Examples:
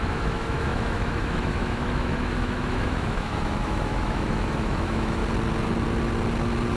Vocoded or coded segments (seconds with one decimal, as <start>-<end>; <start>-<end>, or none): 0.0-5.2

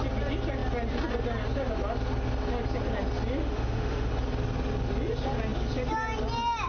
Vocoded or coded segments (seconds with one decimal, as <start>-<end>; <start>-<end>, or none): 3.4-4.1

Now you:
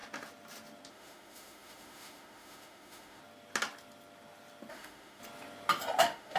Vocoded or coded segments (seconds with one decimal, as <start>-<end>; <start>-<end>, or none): 0.9-3.2; 4.7-5.2; 6.0-6.4